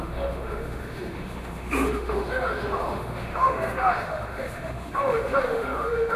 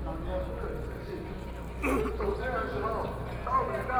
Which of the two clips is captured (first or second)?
second